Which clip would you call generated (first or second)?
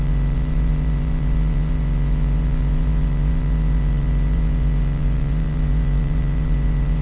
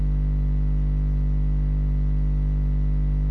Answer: first